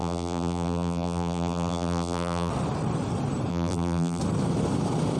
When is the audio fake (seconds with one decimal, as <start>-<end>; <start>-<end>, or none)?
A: 0.0-2.5; 3.5-4.2